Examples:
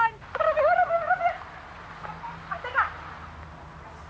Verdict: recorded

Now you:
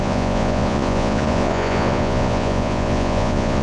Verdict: remade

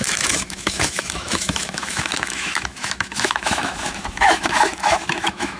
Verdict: remade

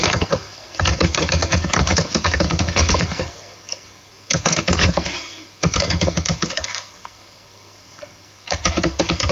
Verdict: remade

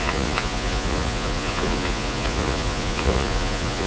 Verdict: remade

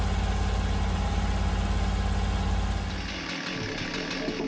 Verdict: recorded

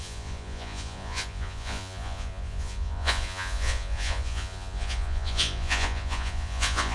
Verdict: remade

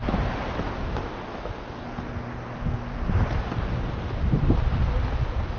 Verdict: recorded